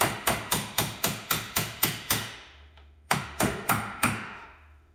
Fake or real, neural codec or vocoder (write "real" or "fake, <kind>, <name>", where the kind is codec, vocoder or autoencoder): fake, autoencoder, DAC-VAE